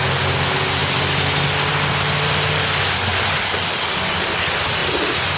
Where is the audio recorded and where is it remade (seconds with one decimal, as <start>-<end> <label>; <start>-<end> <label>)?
0.0-5.4 recorded